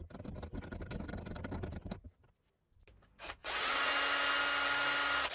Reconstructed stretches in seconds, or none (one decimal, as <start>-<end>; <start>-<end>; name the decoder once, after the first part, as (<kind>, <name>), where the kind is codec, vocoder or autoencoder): 3.4-3.9 (vocoder, WaveNeXt)